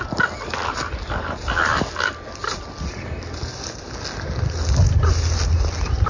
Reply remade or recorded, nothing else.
recorded